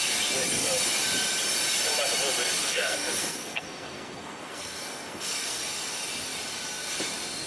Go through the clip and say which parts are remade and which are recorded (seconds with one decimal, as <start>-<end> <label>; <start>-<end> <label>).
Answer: 0.0-2.6 recorded; 2.6-5.6 remade; 5.6-7.5 recorded